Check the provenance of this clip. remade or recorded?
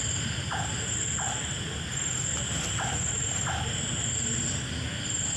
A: recorded